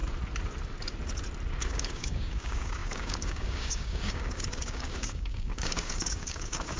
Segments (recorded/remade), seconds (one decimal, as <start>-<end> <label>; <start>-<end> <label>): 0.0-1.6 recorded; 1.6-6.8 remade